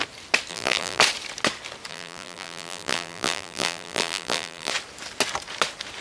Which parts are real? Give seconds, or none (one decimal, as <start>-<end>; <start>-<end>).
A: 0.0-0.5; 1.0-1.9; 4.7-6.0